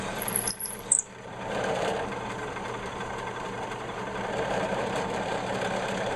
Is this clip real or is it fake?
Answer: fake